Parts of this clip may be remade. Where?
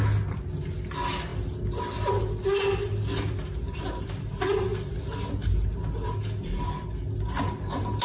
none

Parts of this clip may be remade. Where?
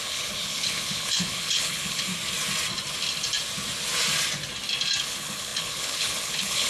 0.0-2.1 (codec, HILCodec); 5.0-6.7